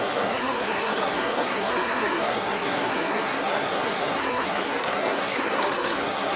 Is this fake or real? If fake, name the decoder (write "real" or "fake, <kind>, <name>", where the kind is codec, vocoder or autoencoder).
fake, codec, SNAC